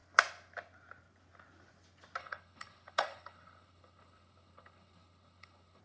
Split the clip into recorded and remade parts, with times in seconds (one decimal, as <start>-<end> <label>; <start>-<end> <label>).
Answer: 0.0-2.2 recorded; 2.2-5.8 remade

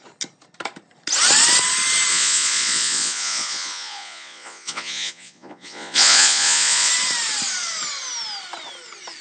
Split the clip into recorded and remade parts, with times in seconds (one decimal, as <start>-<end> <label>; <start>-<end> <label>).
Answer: 0.0-2.1 recorded; 2.1-6.9 remade; 6.9-9.2 recorded

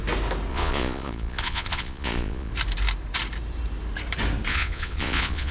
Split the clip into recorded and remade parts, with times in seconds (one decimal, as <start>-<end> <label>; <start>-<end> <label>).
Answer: 0.0-0.5 recorded; 0.5-2.5 remade; 2.5-4.5 recorded; 4.5-5.5 remade

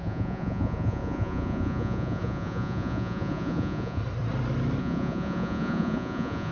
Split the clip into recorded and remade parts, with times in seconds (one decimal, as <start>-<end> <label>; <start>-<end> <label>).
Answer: 0.0-4.0 remade; 4.0-4.8 recorded; 4.8-6.5 remade

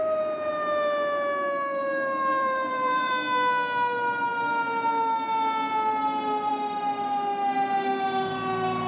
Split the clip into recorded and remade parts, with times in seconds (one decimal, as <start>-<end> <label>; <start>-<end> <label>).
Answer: 0.0-2.3 recorded; 2.3-3.1 remade; 3.1-8.9 recorded

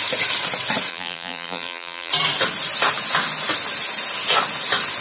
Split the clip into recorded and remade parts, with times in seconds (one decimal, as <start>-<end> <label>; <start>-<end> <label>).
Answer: 0.0-0.9 recorded; 0.9-2.1 remade; 2.1-5.0 recorded

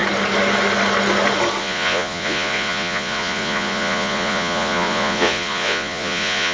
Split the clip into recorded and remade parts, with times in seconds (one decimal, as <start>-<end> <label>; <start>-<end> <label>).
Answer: 0.0-1.6 recorded; 1.6-6.5 remade